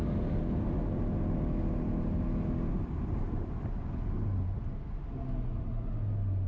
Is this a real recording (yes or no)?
yes